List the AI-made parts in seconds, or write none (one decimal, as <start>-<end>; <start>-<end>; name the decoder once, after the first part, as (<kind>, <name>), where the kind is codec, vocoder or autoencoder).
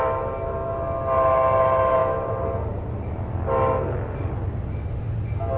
none